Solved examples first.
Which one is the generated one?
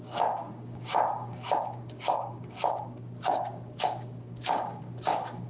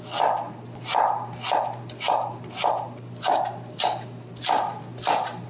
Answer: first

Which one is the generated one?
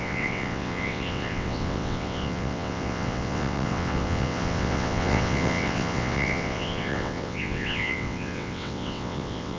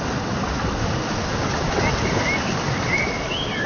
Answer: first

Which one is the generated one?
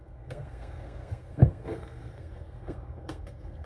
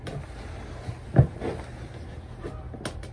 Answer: first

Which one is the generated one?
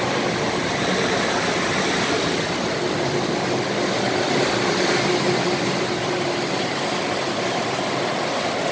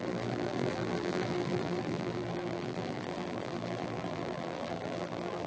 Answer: second